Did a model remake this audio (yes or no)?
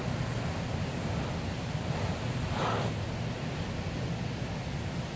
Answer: no